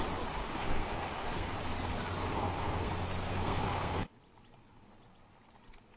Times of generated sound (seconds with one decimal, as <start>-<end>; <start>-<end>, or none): 0.4-1.5; 2.4-2.9; 3.3-4.1